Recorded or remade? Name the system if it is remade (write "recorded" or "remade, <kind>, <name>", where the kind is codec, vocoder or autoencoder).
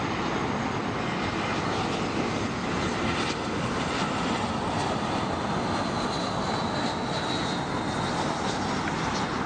recorded